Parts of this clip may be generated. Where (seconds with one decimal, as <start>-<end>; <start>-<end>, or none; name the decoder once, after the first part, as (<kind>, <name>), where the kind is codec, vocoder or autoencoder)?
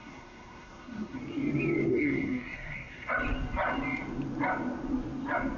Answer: 0.0-1.2 (codec, SNAC); 1.9-3.1